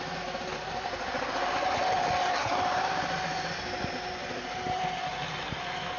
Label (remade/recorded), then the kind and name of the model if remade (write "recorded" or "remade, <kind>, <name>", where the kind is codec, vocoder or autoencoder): recorded